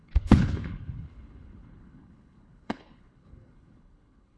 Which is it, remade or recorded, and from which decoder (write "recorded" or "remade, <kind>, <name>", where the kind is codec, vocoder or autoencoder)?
remade, codec, HILCodec